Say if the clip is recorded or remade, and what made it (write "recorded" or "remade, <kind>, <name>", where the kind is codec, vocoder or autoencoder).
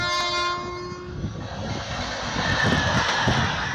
recorded